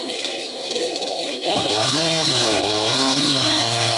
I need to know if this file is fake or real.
fake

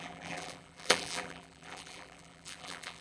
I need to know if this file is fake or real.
fake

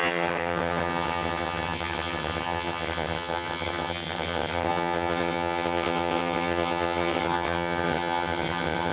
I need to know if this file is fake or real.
fake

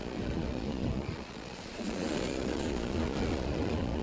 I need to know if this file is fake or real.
fake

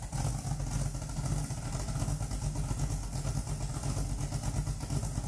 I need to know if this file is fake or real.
real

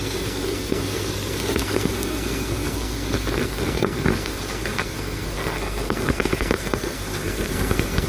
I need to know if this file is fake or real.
fake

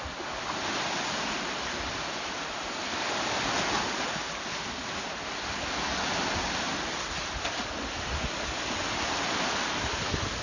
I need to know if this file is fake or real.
real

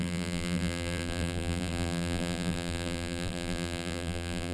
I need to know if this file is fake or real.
fake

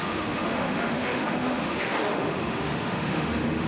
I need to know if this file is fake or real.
fake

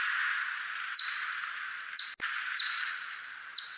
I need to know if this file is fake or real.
real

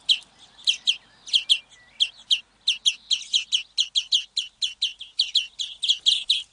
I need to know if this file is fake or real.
real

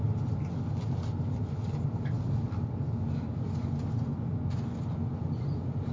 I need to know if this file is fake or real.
real